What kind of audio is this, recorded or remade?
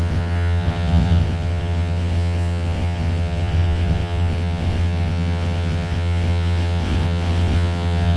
remade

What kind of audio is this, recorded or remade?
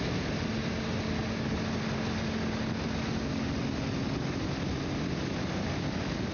recorded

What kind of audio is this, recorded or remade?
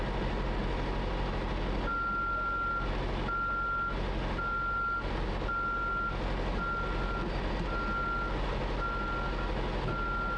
recorded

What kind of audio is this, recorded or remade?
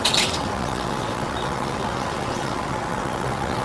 remade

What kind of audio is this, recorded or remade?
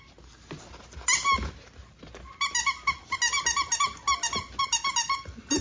recorded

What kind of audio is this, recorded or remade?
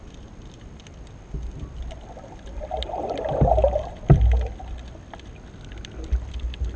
recorded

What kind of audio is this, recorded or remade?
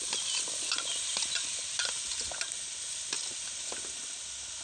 recorded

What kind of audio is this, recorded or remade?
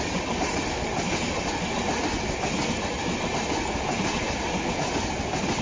recorded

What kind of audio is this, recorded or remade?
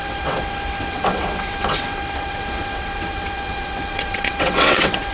remade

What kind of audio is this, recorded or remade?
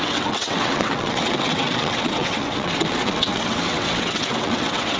remade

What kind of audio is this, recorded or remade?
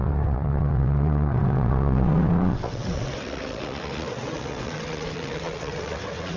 remade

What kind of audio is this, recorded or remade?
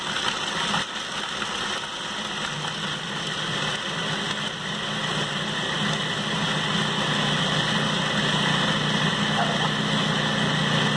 recorded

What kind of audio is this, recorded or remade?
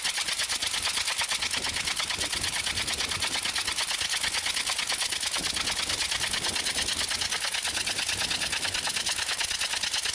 recorded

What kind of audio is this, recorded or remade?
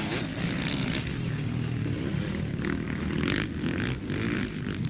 recorded